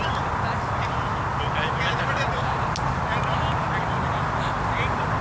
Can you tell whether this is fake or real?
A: real